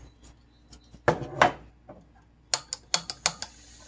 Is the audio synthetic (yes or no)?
no